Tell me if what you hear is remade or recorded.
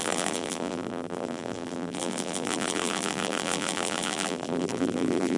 remade